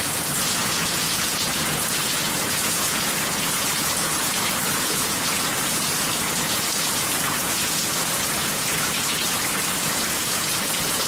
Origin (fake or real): fake